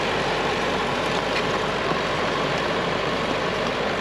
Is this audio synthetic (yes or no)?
yes